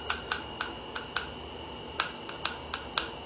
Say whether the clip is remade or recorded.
recorded